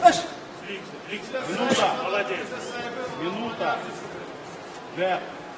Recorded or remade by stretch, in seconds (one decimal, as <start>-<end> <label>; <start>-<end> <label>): 0.0-1.1 recorded; 1.1-1.8 remade; 1.8-5.6 recorded